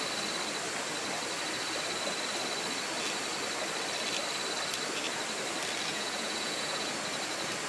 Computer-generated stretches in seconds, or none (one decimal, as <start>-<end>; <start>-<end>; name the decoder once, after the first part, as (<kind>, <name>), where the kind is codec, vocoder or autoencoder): 5.9-6.9 (vocoder, Vocos)